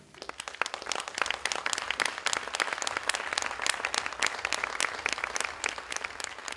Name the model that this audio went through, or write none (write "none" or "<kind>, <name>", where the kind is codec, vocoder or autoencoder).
none